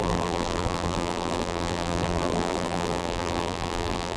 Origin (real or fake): fake